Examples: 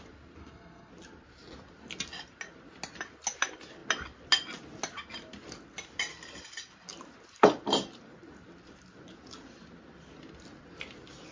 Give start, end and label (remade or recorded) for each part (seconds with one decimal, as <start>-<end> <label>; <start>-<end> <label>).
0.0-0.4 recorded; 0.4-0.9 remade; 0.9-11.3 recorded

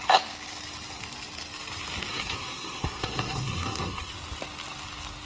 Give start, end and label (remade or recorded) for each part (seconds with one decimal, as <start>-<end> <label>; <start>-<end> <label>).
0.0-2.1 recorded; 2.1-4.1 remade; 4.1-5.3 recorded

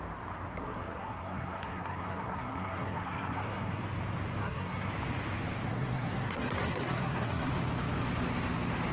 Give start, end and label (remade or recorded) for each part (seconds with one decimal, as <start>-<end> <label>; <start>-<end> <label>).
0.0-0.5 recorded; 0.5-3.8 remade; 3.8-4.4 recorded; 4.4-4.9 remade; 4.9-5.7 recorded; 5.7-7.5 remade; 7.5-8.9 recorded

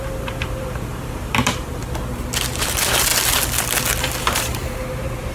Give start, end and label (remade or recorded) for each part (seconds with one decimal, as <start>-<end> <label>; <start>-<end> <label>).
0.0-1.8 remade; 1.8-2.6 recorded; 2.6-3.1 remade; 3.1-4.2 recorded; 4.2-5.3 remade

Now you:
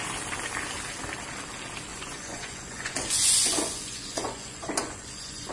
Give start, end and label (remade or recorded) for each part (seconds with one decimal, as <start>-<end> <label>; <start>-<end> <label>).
0.0-1.9 recorded; 1.9-5.5 remade

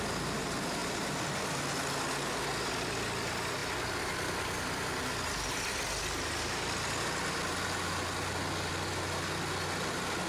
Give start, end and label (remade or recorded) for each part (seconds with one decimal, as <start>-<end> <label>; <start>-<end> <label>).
0.0-10.3 recorded

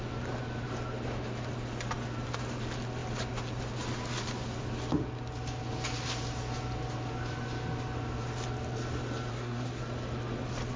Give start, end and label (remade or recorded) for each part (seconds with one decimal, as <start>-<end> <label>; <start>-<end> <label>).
0.0-9.3 recorded; 9.3-9.8 remade; 9.8-10.8 recorded